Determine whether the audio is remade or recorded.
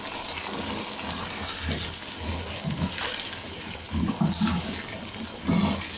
recorded